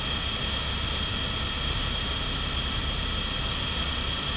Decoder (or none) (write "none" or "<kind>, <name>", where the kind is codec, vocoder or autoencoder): none